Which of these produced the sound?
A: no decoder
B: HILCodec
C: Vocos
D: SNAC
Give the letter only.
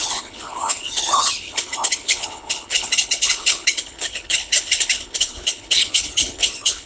B